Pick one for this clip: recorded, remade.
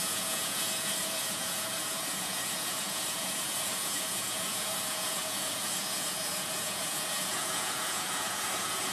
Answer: remade